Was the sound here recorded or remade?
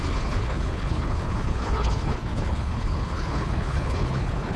remade